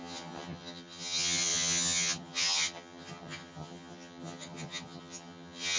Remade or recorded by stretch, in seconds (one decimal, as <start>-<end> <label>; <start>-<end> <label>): 0.0-5.8 remade